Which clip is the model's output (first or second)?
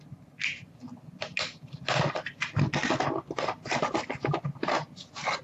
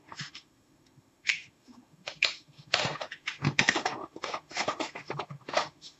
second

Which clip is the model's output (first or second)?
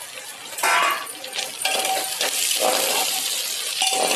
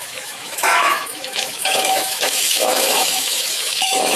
second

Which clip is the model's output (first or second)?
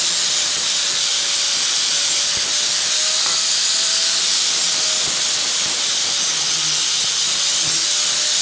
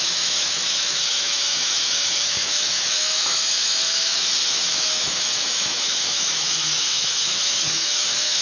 second